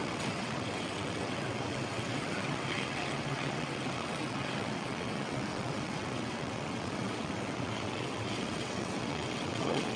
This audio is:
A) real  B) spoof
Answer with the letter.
B